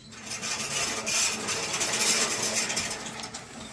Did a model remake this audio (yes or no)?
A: no